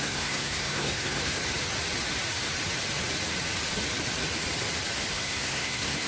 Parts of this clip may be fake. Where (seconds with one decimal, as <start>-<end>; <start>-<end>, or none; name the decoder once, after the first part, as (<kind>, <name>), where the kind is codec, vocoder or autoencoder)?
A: 0.0-1.4 (codec, SNAC); 5.1-6.1